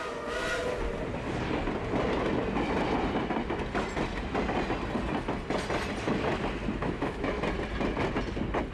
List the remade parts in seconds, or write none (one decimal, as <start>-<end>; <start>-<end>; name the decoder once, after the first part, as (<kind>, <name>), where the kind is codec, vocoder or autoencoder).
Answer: 6.8-7.4 (autoencoder, DAC-VAE)